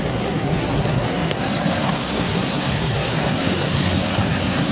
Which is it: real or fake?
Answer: fake